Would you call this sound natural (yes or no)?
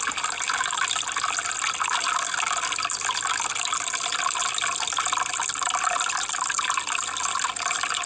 yes